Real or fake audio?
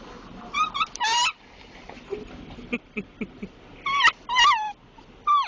real